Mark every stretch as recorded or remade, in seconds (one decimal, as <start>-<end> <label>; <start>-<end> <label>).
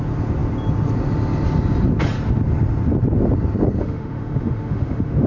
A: 0.0-3.8 recorded; 3.8-5.3 remade